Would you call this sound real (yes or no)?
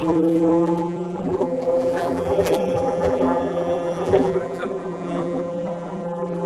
no